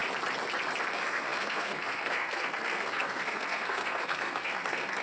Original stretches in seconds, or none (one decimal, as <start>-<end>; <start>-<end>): 0.0-0.9